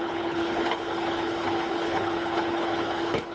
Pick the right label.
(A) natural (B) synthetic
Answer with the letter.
B